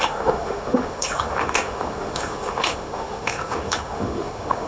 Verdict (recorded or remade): remade